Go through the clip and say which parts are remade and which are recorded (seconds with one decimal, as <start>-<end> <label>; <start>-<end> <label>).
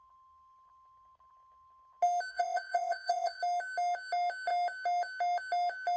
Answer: 0.0-2.3 recorded; 2.3-3.4 remade; 3.4-6.0 recorded